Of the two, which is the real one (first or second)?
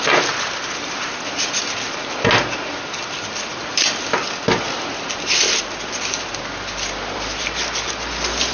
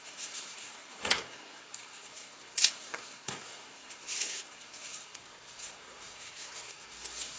first